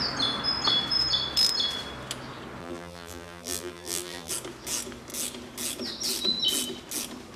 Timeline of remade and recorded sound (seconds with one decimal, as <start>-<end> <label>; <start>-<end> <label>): 0.0-2.6 recorded; 2.6-4.3 remade; 4.3-7.4 recorded